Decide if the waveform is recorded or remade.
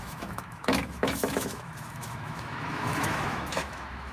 remade